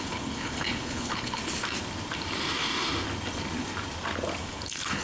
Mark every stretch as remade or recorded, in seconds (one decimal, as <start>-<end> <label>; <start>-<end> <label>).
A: 0.0-1.4 remade; 1.4-4.4 recorded; 4.4-5.0 remade